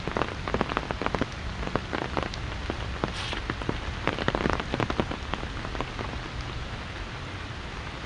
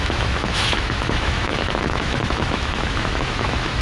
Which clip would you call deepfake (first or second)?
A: second